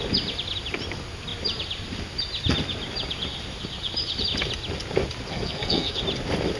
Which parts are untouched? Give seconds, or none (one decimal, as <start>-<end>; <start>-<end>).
0.0-5.3; 6.0-6.6